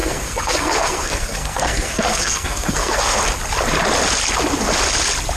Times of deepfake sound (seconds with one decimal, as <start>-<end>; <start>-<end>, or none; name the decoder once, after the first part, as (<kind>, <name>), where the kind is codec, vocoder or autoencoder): 0.0-3.2 (codec, SNAC)